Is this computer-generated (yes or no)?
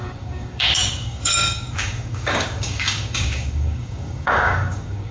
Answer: yes